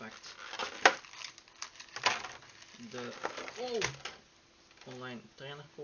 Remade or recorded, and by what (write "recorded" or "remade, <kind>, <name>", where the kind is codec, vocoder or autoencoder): recorded